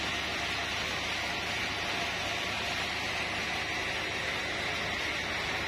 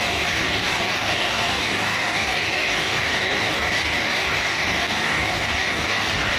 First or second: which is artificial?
second